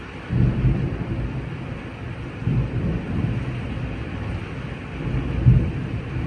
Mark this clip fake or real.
fake